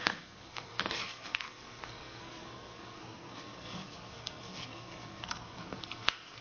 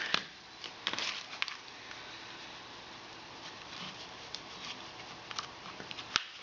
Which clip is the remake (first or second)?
first